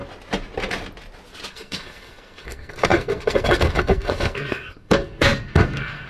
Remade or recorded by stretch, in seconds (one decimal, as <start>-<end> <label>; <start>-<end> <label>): 0.0-1.5 recorded; 1.5-6.1 remade